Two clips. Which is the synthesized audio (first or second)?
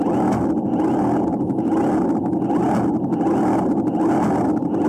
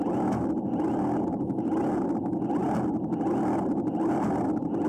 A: second